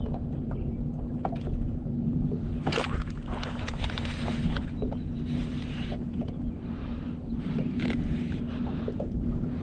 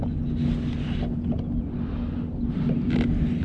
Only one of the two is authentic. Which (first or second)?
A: second